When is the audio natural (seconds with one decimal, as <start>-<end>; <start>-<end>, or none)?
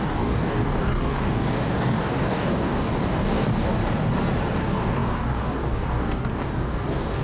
3.8-4.6